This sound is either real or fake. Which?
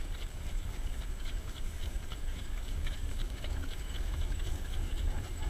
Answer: fake